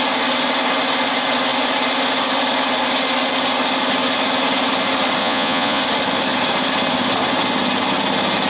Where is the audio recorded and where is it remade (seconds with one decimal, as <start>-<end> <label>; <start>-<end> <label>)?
0.0-5.2 recorded; 5.2-5.8 remade; 5.8-8.5 recorded